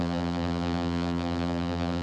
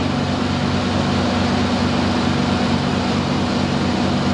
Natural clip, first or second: second